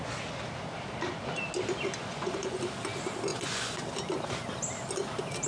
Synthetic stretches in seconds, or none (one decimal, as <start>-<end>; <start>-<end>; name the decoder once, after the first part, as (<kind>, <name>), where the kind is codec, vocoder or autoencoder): 2.0-2.6 (vocoder, Vocos); 3.3-3.8